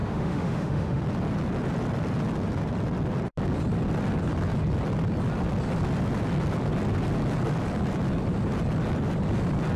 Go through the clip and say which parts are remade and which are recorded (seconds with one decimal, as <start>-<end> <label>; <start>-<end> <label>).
0.0-1.0 remade; 1.0-9.8 recorded